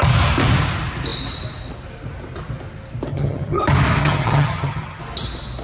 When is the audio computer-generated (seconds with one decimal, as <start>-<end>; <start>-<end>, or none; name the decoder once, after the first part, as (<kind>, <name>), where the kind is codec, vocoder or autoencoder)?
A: 3.1-3.6 (vocoder, HiFi-GAN); 4.0-5.0